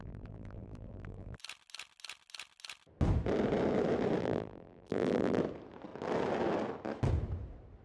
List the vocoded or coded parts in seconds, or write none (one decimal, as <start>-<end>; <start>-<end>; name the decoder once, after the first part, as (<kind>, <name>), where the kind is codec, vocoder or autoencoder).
0.0-1.4 (vocoder, BigVGAN v2); 4.2-5.4